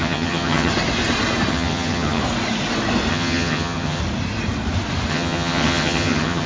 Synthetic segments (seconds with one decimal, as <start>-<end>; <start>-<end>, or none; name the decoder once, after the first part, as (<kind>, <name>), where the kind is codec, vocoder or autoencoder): 0.0-0.7 (vocoder, HiFi-GAN); 1.5-2.2; 3.1-4.0; 5.1-6.5